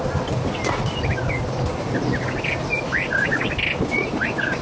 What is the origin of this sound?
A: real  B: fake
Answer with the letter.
A